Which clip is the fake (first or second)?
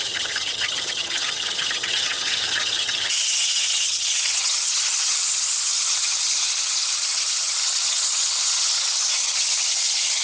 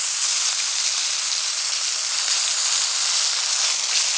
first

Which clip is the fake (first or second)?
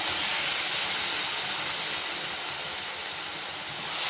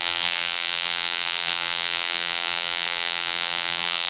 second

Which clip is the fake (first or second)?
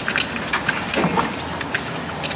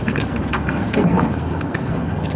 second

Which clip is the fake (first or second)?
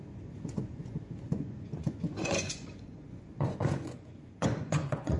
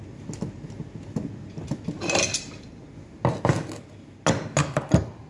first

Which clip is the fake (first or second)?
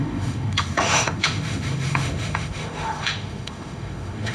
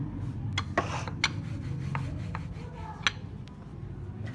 first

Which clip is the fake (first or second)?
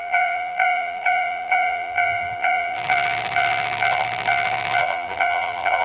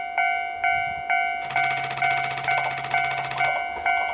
first